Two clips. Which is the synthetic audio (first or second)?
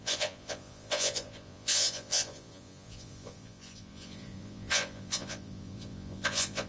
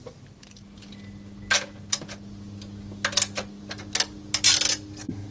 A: first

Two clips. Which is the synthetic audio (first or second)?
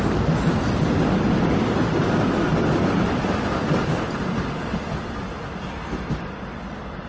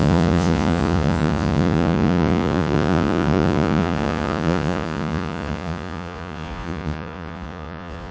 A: second